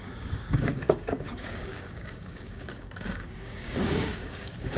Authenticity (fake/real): fake